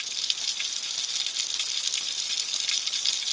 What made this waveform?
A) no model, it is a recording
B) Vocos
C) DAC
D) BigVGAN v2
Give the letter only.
A